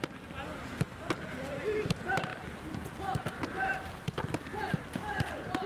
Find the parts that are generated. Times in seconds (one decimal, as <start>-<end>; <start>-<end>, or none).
2.3-4.3